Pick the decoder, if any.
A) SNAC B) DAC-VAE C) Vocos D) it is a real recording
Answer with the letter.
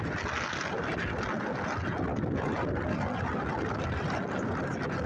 D